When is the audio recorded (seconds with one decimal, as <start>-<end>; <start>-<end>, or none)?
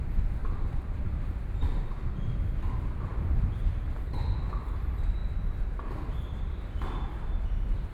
0.0-0.4; 1.6-7.9